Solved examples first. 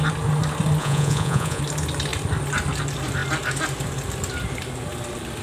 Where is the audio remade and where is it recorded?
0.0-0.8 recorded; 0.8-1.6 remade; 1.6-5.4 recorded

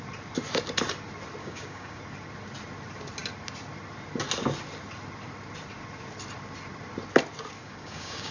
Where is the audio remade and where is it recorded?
0.0-1.4 recorded; 1.4-2.0 remade; 2.0-7.6 recorded; 7.6-8.3 remade

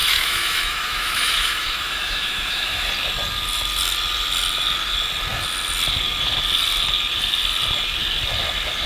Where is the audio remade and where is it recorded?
0.0-2.9 remade; 2.9-8.9 recorded